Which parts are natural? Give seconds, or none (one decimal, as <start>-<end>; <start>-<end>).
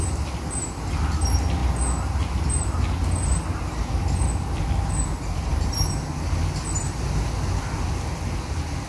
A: 0.0-5.5; 6.4-8.9